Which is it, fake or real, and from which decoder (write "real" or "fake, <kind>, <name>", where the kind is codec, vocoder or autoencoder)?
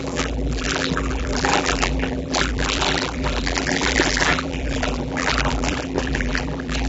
fake, vocoder, BigVGAN v2